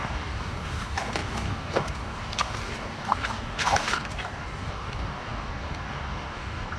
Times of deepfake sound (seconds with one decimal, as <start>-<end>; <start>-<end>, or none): 0.0-6.8